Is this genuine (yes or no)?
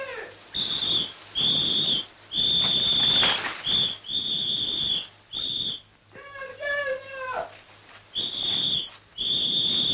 yes